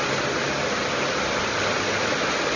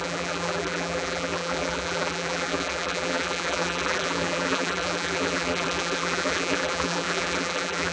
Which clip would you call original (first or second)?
first